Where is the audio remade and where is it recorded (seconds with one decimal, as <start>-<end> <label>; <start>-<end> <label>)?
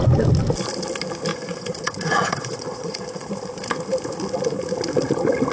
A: 0.0-1.3 recorded; 1.3-3.3 remade; 3.3-5.5 recorded